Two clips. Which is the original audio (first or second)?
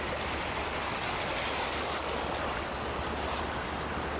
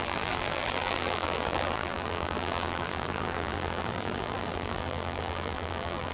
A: first